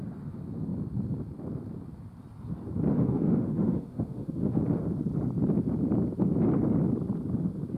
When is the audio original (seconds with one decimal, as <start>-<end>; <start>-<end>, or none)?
0.0-2.9; 4.6-7.8